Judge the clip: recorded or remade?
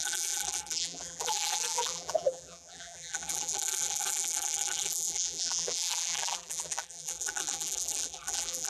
remade